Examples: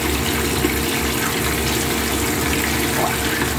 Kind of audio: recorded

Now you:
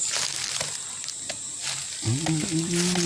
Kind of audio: recorded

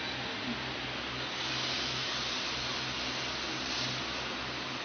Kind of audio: recorded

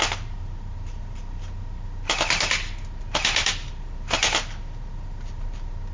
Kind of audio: recorded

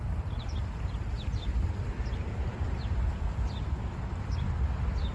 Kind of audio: recorded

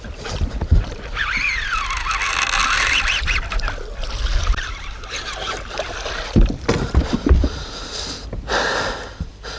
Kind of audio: recorded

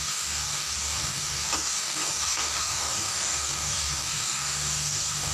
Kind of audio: remade